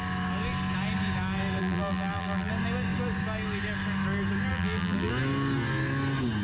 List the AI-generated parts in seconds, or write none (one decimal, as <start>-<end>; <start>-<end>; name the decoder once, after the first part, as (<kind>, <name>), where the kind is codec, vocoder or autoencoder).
1.6-2.5 (vocoder, BigVGAN v2); 4.5-5.1